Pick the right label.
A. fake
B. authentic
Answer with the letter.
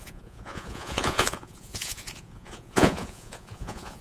A